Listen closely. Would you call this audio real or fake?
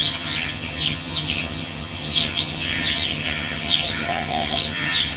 fake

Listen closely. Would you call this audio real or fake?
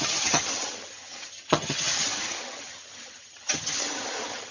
fake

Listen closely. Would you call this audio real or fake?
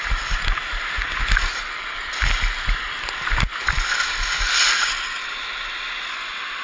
real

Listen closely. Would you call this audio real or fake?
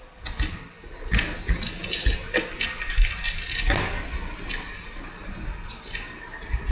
real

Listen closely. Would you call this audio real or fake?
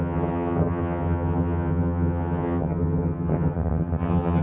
fake